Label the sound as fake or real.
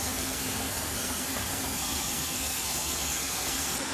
fake